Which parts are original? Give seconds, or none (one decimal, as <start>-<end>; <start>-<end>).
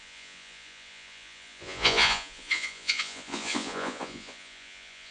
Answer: none